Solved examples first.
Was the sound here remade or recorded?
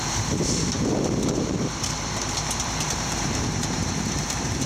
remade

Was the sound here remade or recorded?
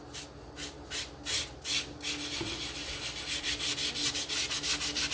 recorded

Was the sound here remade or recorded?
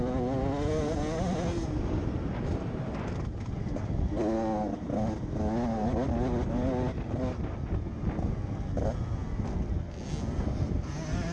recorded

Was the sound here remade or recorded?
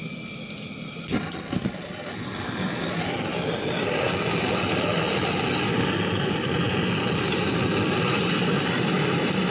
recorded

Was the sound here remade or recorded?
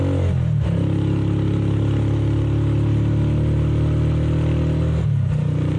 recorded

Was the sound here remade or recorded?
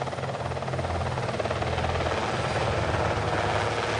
recorded